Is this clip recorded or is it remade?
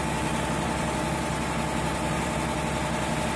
recorded